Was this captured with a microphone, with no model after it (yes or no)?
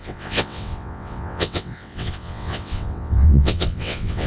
no